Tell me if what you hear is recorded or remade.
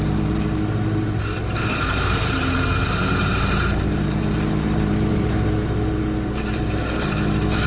remade